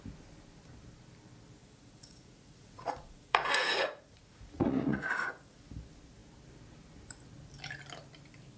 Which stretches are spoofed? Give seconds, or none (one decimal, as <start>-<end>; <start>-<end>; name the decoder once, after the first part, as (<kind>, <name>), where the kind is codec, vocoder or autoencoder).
1.6-5.6 (vocoder, Vocos)